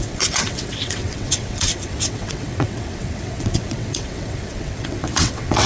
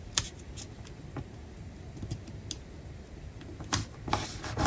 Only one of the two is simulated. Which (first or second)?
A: first